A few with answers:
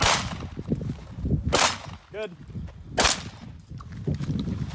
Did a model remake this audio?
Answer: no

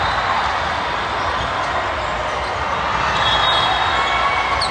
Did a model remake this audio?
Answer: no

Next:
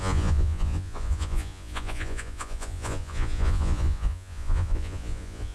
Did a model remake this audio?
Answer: yes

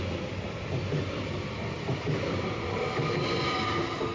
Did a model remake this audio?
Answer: no